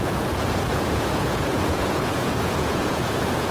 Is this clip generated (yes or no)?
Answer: yes